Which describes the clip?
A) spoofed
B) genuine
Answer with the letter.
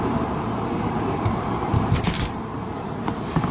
A